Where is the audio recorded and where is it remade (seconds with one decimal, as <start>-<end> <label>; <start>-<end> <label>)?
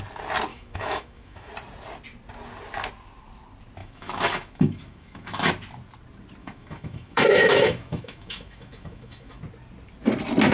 0.0-0.5 recorded; 0.5-1.5 remade; 1.5-3.8 recorded; 3.8-5.5 remade; 5.5-6.4 recorded; 6.4-9.4 remade; 9.4-10.5 recorded